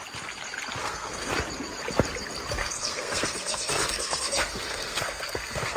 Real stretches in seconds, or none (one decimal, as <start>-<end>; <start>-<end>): 0.0-0.8; 1.3-2.6